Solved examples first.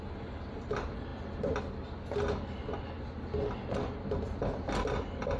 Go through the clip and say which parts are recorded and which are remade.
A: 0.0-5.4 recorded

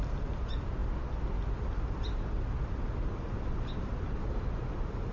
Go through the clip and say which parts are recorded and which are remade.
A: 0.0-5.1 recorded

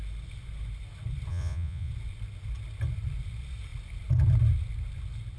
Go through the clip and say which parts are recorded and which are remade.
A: 0.0-1.3 recorded; 1.3-1.9 remade; 1.9-5.4 recorded

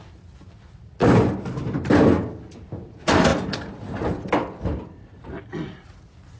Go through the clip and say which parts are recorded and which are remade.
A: 0.0-6.4 recorded